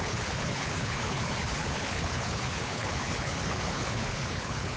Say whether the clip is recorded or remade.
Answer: remade